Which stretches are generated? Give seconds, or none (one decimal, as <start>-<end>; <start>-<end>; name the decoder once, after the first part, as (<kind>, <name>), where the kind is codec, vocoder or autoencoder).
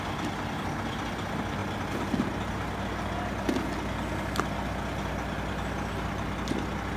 none